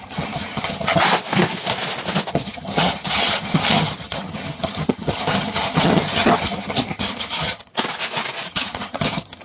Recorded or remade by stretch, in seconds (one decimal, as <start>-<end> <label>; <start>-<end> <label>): 0.0-1.0 remade; 1.0-2.3 recorded; 2.3-7.7 remade; 7.7-8.5 recorded; 8.5-9.4 remade